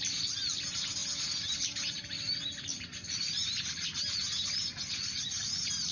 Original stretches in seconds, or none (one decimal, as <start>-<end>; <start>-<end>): 0.0-5.9